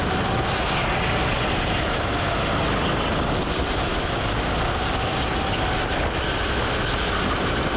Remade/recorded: recorded